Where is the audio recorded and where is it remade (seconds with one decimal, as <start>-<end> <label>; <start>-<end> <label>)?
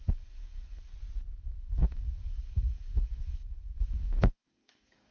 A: 0.0-0.9 remade; 0.9-1.4 recorded; 1.4-5.1 remade